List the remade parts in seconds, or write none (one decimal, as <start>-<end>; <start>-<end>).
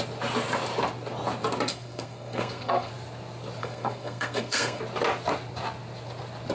1.7-2.9; 3.6-4.8